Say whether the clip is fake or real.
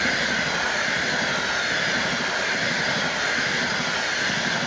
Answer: real